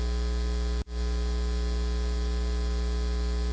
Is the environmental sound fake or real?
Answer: real